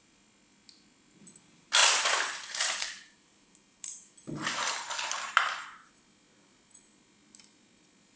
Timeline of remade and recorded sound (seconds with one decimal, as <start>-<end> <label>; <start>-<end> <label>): 0.0-1.8 recorded; 1.8-5.9 remade; 5.9-8.2 recorded

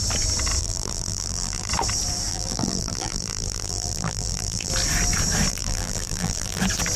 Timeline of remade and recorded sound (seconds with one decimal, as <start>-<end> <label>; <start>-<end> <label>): 0.0-0.6 recorded; 0.6-1.7 remade; 1.7-2.3 recorded; 2.3-4.7 remade; 4.7-5.5 recorded; 5.5-6.6 remade; 6.6-7.0 recorded

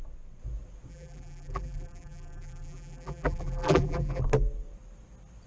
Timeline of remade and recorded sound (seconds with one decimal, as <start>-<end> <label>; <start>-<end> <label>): 0.0-0.9 recorded; 0.9-4.2 remade; 4.2-5.5 recorded

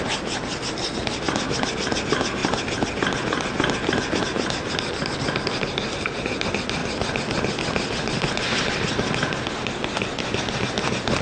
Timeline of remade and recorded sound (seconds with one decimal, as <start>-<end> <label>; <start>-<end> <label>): 0.0-11.2 recorded

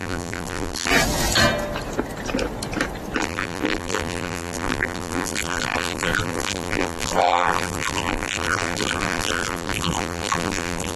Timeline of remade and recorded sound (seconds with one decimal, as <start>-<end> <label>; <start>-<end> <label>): 0.0-0.9 remade; 0.9-3.2 recorded; 3.2-11.0 remade

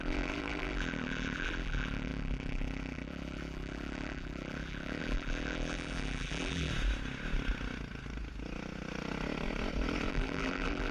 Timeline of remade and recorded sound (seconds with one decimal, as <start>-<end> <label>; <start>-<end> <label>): 0.0-6.7 remade; 6.7-10.1 recorded; 10.1-10.9 remade

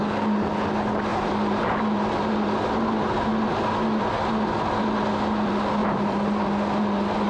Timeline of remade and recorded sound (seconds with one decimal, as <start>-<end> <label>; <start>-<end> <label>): 0.0-1.1 recorded; 1.1-1.8 remade; 1.8-5.8 recorded; 5.8-6.4 remade; 6.4-7.3 recorded

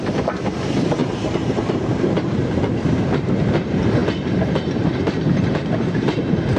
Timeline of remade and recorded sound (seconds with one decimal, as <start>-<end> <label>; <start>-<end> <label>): 0.0-6.6 remade